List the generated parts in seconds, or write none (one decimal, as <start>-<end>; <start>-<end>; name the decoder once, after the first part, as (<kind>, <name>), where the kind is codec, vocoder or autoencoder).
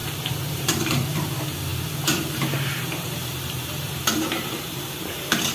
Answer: 0.0-5.5 (vocoder, BigVGAN v2)